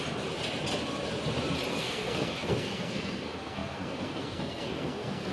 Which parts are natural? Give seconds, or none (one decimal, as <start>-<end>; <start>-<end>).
0.0-1.7